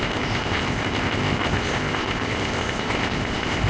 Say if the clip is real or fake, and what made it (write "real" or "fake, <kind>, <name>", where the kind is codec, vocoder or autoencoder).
fake, codec, ZipCodec